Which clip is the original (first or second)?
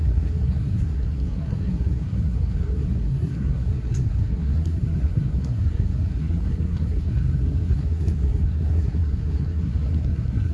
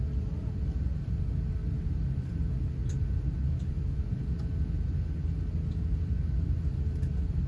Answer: second